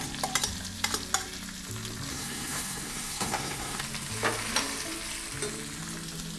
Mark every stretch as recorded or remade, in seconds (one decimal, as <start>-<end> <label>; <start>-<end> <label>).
0.0-2.1 recorded; 2.1-3.8 remade; 3.8-6.4 recorded